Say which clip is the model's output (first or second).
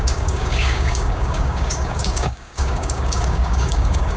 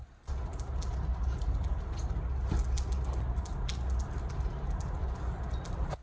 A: first